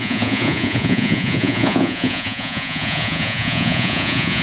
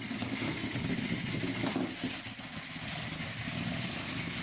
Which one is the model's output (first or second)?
first